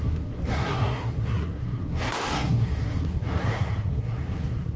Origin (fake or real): fake